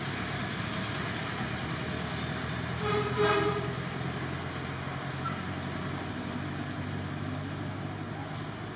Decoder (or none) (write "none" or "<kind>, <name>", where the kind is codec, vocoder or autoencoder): none